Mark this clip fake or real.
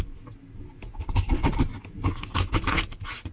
real